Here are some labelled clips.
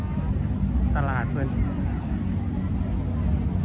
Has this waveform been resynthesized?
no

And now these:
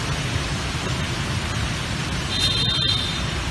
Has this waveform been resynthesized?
no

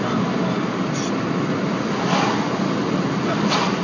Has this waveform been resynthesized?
no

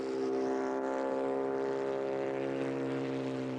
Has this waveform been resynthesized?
yes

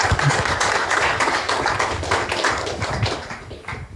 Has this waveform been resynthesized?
yes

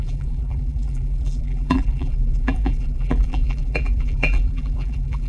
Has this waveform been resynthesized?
yes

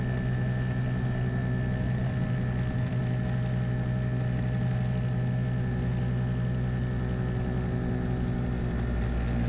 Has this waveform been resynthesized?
no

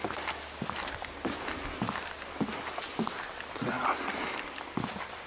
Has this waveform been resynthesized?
no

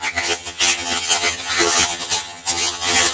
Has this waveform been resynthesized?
yes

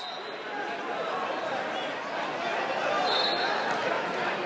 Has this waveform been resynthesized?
no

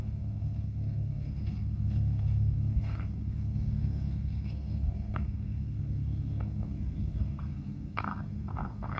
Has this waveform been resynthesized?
yes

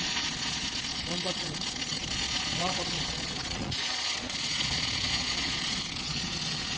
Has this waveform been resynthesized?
yes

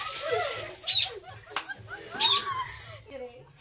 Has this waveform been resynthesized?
no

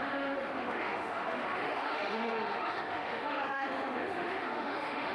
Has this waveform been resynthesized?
yes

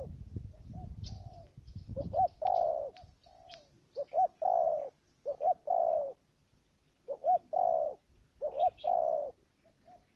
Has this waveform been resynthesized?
no